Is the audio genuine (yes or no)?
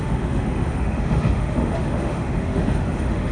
no